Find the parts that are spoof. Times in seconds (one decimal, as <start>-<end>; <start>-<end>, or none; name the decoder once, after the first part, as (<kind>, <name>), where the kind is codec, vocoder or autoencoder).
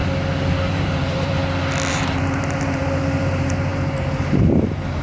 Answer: 0.7-1.4 (vocoder, BigVGAN v2); 1.9-5.0